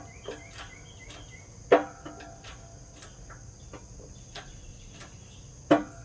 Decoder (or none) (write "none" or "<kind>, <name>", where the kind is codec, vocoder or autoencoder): none